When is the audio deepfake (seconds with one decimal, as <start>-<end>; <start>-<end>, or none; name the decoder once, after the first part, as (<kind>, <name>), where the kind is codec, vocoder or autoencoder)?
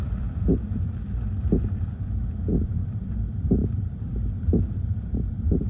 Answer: 0.0-0.7 (vocoder, BigVGAN v2); 2.5-5.7